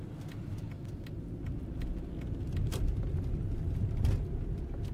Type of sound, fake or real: real